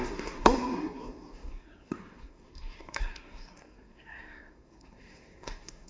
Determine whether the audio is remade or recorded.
remade